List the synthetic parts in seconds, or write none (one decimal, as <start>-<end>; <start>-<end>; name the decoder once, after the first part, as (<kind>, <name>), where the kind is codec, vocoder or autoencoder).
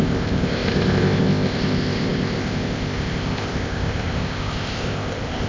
0.0-5.5 (codec, ZipCodec)